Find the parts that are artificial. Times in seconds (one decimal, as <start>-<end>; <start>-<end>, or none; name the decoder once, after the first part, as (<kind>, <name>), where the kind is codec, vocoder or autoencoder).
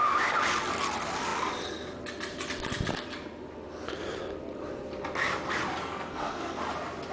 5.8-6.6 (codec, SNAC)